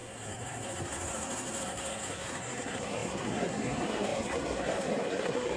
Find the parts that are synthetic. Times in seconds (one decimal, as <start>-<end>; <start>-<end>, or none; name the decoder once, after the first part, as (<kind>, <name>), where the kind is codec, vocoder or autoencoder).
0.0-5.6 (codec, SNAC)